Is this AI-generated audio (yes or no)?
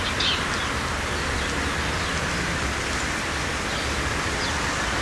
no